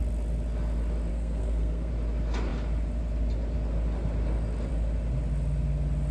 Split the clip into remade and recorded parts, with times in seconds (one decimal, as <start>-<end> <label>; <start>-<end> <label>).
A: 0.0-1.1 recorded; 1.1-1.9 remade; 1.9-6.1 recorded